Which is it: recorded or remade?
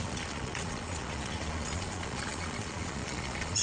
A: remade